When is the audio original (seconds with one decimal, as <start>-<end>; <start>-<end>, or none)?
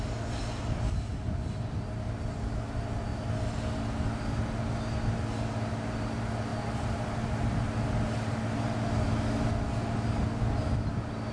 0.0-11.3